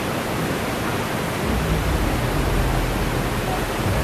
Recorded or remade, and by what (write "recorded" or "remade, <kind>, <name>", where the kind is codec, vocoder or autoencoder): recorded